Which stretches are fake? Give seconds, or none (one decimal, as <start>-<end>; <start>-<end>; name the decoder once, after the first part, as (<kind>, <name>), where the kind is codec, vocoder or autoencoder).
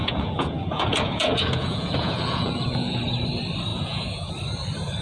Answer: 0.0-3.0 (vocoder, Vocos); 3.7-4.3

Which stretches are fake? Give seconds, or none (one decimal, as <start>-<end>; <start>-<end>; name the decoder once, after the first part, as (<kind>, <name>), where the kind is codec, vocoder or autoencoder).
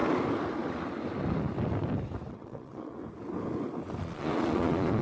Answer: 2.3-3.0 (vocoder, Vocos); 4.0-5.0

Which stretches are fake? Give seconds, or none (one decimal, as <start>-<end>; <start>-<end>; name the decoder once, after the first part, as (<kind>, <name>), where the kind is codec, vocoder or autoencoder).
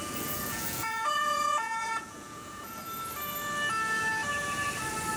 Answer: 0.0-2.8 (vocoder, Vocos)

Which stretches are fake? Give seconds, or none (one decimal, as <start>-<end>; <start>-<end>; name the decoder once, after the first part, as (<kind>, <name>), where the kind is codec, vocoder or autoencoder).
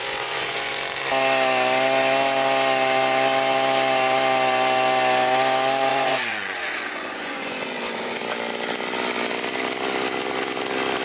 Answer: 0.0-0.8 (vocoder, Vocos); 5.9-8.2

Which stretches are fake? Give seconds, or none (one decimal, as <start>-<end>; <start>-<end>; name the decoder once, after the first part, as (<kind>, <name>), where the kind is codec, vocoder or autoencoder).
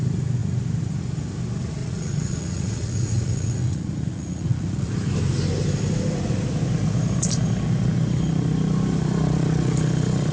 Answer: 1.8-4.9 (vocoder, Vocos)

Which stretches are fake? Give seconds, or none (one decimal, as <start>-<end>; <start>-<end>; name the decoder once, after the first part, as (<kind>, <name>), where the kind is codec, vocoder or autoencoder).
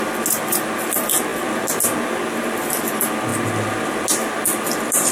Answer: none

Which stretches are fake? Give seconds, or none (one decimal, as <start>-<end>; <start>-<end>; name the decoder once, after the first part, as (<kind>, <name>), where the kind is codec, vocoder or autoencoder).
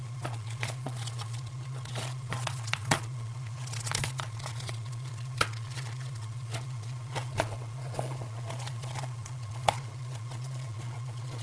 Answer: 0.0-11.4 (vocoder, Vocos)